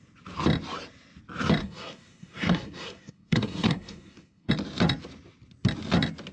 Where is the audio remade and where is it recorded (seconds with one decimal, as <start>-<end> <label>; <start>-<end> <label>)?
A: 0.0-1.6 recorded; 1.6-4.5 remade; 4.5-6.3 recorded